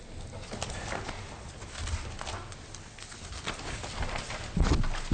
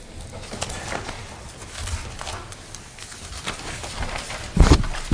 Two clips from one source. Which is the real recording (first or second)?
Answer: first